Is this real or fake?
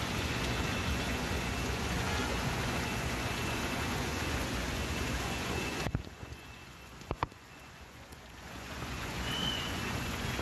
fake